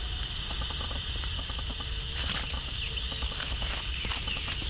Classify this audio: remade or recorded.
recorded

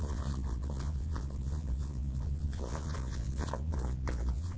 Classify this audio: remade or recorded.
remade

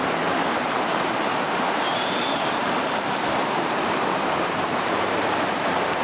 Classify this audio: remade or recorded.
remade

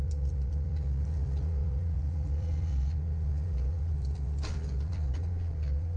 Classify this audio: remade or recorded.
remade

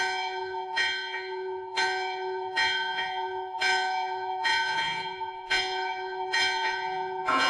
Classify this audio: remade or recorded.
remade